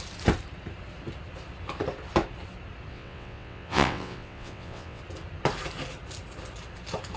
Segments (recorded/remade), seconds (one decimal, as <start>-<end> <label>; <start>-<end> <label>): 0.0-2.9 recorded; 2.9-5.0 remade; 5.0-7.2 recorded